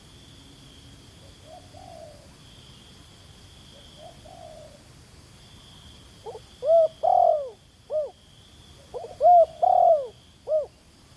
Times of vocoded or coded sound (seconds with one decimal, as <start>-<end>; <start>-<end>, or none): none